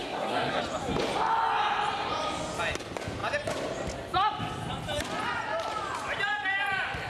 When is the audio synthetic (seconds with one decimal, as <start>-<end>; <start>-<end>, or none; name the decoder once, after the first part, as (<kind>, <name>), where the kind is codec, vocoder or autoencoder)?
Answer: 0.0-0.6 (codec, SNAC)

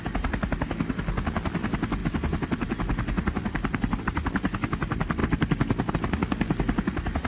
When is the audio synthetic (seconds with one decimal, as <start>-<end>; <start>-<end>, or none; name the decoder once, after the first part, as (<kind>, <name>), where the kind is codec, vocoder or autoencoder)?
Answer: none